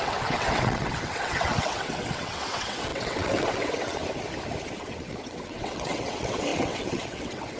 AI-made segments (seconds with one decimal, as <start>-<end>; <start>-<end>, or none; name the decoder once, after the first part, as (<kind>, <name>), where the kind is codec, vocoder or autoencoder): 0.0-4.0 (vocoder, WaveNeXt); 4.8-7.6